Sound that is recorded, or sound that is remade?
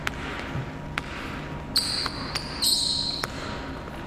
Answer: recorded